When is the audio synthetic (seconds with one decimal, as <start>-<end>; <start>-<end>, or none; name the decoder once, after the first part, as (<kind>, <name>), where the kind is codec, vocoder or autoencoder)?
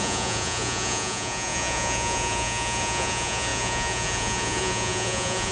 0.0-5.5 (vocoder, Vocos)